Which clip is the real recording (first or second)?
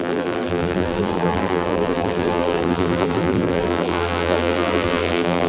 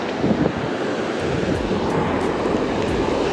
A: second